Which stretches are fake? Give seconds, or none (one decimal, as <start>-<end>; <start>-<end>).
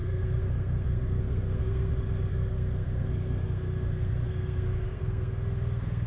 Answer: 0.0-1.9; 2.3-6.1